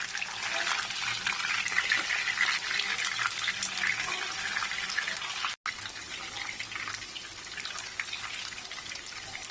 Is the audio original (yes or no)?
yes